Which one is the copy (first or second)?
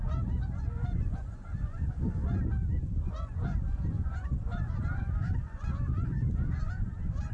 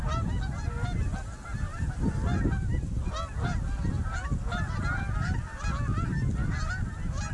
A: first